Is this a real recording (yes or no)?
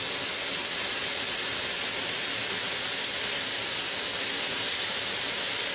yes